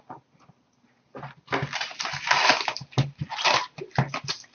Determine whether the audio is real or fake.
real